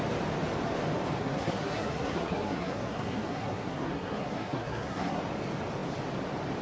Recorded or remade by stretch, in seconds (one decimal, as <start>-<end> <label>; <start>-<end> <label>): 0.0-1.2 recorded; 1.2-5.2 remade; 5.2-6.6 recorded